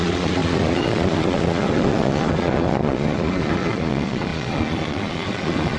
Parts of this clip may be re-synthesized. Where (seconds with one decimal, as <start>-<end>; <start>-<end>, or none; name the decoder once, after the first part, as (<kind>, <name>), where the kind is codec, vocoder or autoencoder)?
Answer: 0.0-5.8 (vocoder, Vocos)